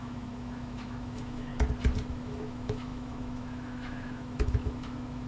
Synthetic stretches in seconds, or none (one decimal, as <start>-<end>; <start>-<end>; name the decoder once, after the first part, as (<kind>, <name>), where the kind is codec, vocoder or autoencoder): 0.0-1.5 (autoencoder, DAC-VAE); 2.1-5.3